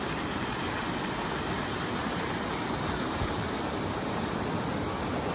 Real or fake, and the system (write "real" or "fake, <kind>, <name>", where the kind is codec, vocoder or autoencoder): real